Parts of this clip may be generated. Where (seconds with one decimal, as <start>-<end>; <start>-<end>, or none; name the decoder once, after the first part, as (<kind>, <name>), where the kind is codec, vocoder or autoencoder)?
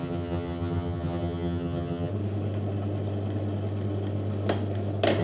0.0-2.1 (vocoder, HiFi-GAN)